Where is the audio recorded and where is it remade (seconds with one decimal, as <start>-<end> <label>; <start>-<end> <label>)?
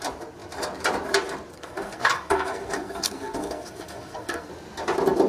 0.0-1.5 recorded; 1.5-4.5 remade; 4.5-5.3 recorded